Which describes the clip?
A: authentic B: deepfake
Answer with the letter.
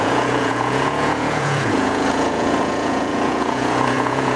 B